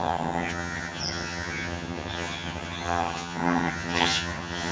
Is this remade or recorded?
remade